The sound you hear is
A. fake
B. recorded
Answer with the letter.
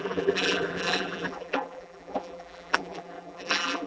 A